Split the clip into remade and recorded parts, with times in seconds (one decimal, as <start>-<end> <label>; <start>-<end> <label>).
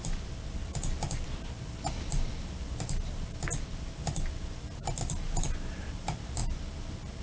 0.0-7.2 recorded